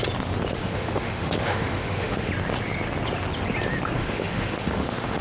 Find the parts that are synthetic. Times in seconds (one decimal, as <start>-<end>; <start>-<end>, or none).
0.5-2.3; 4.0-5.2